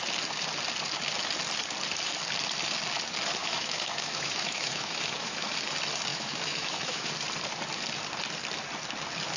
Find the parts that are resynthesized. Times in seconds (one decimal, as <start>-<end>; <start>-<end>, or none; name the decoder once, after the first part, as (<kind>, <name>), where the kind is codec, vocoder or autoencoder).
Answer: 3.4-5.5 (autoencoder, DAC-VAE); 6.1-7.1